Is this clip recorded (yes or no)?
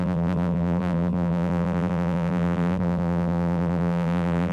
no